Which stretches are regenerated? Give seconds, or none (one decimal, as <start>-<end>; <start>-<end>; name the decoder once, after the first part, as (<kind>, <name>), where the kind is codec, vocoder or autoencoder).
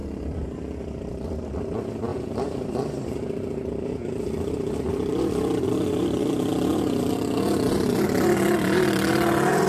0.0-1.5 (vocoder, BigVGAN v2); 2.1-7.1